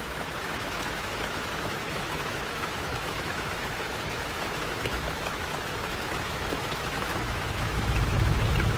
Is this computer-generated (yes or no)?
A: yes